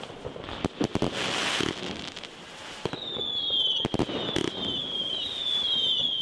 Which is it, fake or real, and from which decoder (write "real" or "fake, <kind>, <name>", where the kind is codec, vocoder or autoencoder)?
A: real